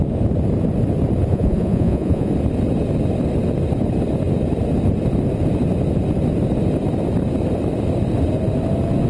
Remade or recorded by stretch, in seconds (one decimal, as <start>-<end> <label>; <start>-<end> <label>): 0.0-1.3 recorded; 1.3-2.3 remade; 2.3-9.1 recorded